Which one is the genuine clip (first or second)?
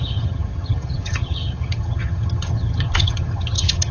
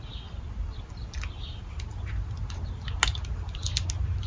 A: second